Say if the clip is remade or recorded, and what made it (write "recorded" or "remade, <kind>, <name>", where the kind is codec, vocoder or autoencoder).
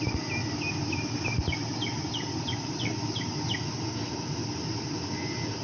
recorded